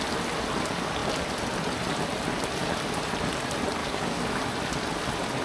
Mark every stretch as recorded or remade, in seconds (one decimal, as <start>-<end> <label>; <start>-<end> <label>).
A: 0.0-3.8 recorded; 3.8-4.4 remade; 4.4-5.4 recorded